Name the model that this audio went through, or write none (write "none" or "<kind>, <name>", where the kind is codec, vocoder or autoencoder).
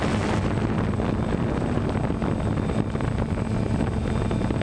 none